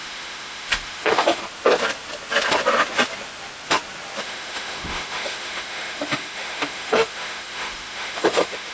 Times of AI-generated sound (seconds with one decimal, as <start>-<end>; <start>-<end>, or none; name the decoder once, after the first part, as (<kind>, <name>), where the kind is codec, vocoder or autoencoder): 0.0-1.4 (autoencoder, DAC-VAE); 4.2-8.7